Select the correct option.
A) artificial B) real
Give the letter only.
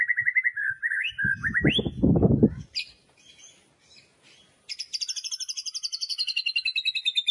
B